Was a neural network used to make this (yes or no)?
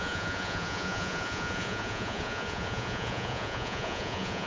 yes